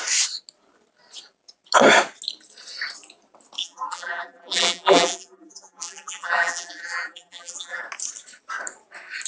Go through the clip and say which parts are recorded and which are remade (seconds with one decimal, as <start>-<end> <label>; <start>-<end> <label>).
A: 0.0-3.6 recorded; 3.6-7.8 remade; 7.8-9.3 recorded